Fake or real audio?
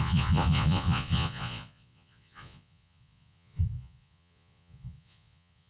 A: fake